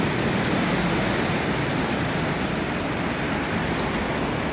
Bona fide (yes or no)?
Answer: yes